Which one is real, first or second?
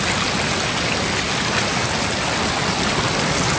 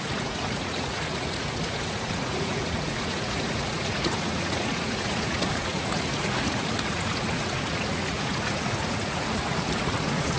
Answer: first